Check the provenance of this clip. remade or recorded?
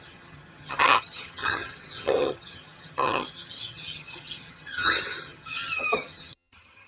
remade